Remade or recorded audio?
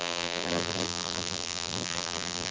remade